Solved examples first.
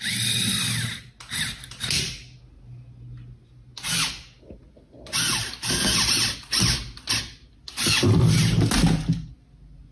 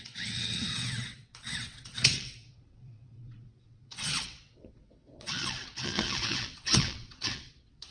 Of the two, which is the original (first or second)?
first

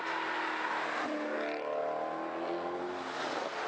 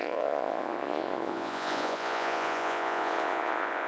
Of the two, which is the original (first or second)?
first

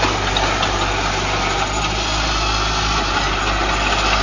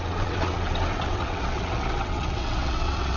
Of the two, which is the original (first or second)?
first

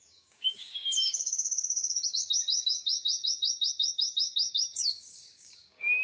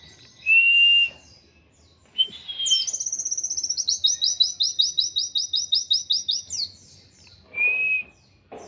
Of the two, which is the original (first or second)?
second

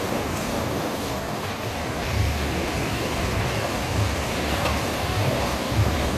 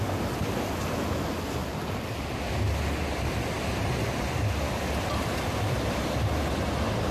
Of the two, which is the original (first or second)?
second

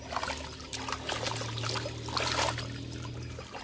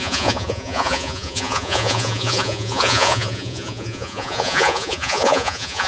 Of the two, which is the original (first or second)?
first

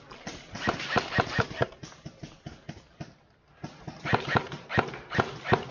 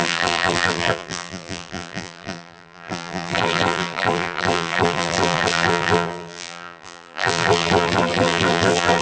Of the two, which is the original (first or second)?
first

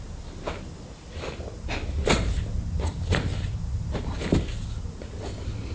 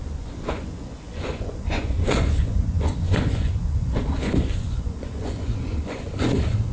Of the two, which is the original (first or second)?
first